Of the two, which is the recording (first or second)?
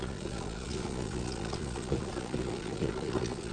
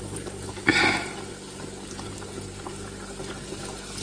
second